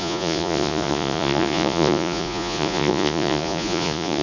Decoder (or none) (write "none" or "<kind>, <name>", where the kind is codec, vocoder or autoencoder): vocoder, Vocos